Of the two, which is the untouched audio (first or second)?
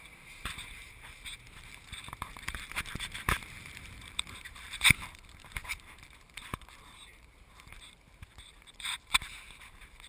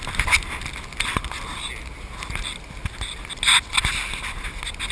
second